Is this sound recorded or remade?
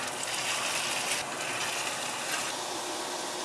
recorded